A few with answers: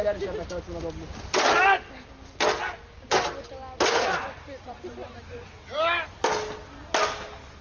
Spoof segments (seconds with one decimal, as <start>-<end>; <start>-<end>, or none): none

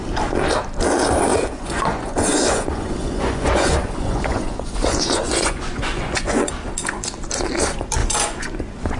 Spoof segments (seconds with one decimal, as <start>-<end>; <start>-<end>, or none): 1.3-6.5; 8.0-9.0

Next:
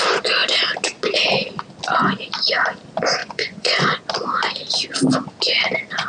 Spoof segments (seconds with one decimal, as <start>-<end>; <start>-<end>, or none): 3.2-4.0

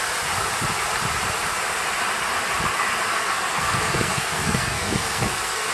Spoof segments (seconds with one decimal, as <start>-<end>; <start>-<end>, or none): 3.1-5.7

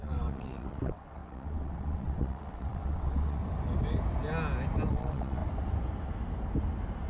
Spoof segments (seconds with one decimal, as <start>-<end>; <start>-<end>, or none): 0.0-3.4; 4.9-5.4